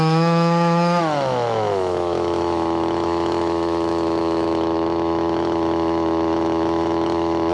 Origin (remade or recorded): remade